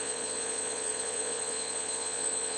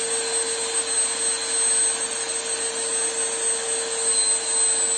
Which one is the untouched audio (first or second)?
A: second